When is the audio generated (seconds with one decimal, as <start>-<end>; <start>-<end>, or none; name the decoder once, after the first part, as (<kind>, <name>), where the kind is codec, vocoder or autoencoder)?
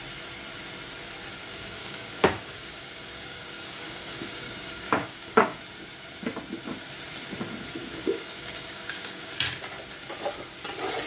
1.4-5.6 (codec, DAC); 7.8-9.3